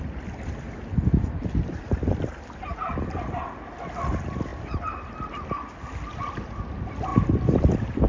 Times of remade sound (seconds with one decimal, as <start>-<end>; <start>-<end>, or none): none